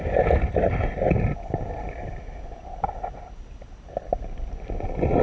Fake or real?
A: real